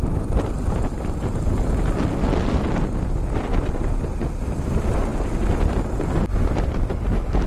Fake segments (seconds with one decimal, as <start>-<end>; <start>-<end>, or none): none